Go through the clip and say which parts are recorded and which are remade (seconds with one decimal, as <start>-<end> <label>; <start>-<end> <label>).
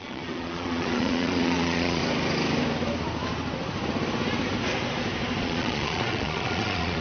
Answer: 0.0-2.0 remade; 2.0-5.4 recorded; 5.4-7.0 remade